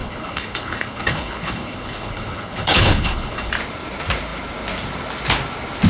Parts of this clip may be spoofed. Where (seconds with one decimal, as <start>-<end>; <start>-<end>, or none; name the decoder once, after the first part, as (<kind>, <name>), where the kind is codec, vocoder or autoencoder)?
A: 0.0-3.5 (codec, HILCodec)